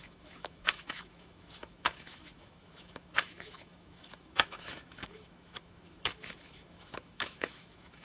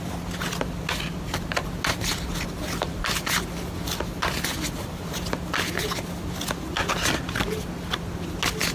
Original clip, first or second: second